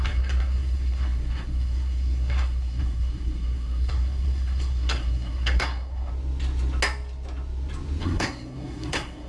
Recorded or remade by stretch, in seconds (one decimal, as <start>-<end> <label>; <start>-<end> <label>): 0.0-6.1 remade; 6.1-8.0 recorded; 8.0-9.3 remade